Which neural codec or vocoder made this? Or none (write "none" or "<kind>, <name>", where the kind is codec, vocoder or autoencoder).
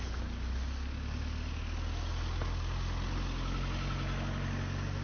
none